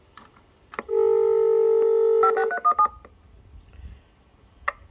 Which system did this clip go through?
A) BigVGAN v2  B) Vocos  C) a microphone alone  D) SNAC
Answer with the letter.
C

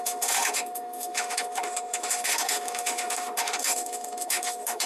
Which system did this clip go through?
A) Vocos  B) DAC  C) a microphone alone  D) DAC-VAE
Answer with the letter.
D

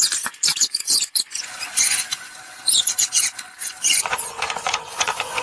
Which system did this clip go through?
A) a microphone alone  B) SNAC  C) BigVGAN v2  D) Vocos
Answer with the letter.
D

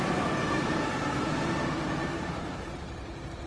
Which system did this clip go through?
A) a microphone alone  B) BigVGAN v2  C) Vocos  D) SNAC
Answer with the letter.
B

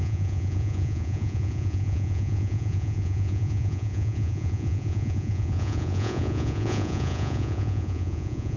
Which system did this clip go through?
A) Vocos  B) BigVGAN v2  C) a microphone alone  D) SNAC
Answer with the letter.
A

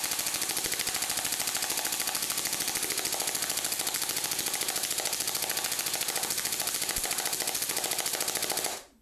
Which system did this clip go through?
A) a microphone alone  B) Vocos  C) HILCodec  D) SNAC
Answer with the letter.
A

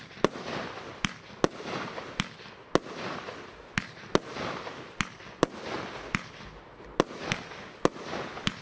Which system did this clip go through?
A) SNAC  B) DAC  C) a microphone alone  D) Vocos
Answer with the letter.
C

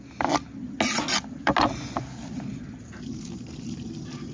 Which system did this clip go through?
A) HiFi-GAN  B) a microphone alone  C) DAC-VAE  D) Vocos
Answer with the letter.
B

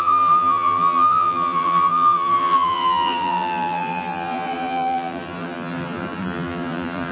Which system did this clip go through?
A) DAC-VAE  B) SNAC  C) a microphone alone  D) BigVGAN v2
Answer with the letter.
D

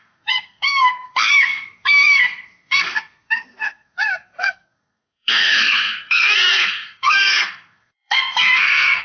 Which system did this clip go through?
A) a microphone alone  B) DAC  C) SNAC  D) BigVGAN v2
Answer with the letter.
C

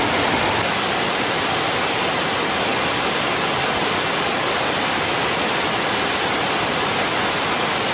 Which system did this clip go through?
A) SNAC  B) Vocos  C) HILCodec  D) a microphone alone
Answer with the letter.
D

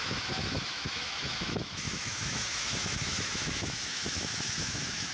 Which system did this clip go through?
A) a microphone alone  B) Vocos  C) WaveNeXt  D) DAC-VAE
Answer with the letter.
D